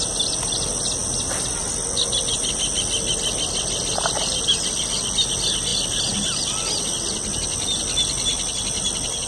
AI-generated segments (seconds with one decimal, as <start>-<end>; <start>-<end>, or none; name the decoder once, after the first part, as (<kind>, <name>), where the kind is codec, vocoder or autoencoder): none